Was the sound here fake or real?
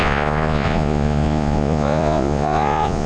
fake